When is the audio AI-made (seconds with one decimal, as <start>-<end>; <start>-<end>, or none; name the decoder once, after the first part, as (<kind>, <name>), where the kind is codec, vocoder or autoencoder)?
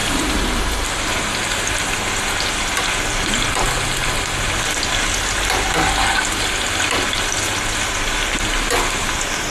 0.0-0.6 (vocoder, BigVGAN v2)